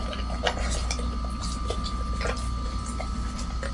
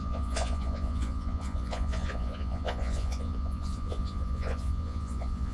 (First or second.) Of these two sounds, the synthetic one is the second